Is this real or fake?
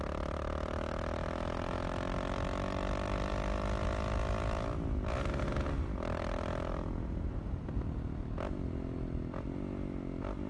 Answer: real